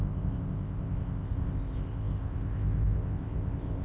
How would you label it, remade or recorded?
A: remade